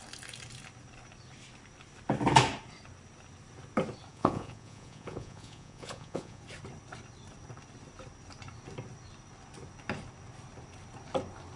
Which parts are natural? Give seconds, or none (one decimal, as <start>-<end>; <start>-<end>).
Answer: 0.0-4.1; 6.4-11.6